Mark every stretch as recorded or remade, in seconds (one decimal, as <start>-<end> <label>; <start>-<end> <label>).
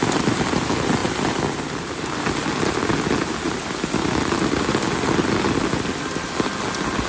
0.0-7.1 recorded